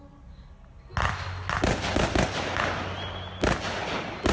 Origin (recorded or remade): recorded